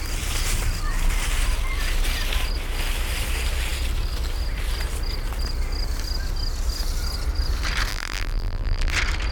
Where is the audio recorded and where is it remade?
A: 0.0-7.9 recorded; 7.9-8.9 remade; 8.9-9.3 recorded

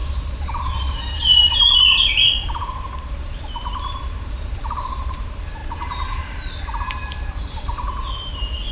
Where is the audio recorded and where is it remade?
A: 0.0-1.2 remade; 1.2-2.5 recorded; 2.5-8.7 remade

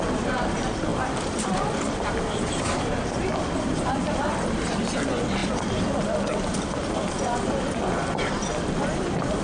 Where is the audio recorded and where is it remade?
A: 0.0-9.4 remade